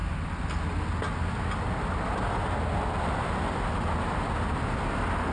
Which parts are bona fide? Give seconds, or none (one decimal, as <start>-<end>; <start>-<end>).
0.0-5.3